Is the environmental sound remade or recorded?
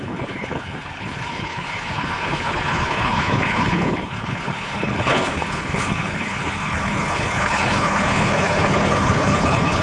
remade